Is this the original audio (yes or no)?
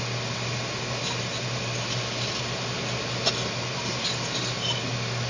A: yes